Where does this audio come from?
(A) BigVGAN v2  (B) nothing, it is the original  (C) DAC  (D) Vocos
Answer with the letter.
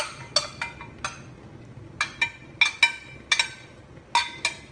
B